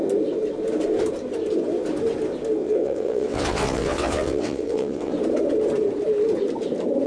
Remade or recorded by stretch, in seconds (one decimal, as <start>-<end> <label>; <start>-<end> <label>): 0.0-2.6 recorded; 2.6-5.1 remade; 5.1-7.1 recorded